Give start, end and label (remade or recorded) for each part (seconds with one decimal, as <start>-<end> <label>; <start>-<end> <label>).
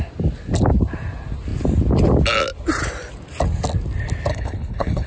0.0-4.3 recorded; 4.3-5.1 remade